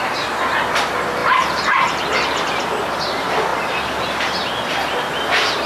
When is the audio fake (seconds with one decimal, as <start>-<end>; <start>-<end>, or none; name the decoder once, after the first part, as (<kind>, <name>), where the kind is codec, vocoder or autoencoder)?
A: 1.2-2.6 (vocoder, BigVGAN v2)